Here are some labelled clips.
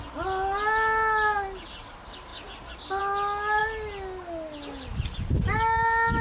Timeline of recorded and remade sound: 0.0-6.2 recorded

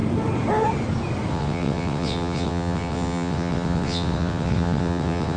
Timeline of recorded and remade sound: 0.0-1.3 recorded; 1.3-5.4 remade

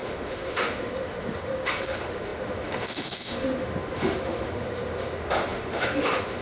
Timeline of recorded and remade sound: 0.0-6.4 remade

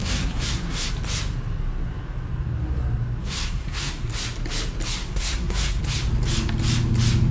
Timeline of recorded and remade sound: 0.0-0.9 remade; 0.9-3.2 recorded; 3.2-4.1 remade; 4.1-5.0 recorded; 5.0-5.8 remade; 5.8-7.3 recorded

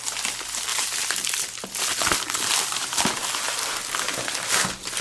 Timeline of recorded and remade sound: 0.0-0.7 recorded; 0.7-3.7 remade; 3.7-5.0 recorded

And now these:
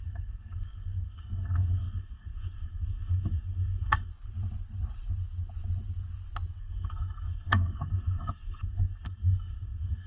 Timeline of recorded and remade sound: 0.0-4.1 remade; 4.1-6.6 recorded; 6.6-10.1 remade